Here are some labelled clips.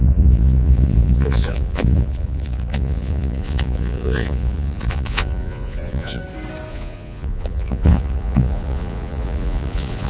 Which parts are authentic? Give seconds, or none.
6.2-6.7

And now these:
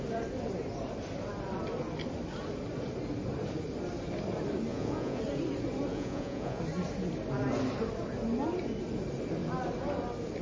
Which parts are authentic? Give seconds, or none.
0.0-4.7; 5.2-5.9; 6.6-10.4

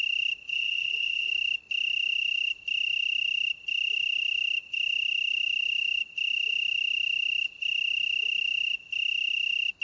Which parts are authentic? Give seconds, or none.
0.0-0.5; 1.3-9.8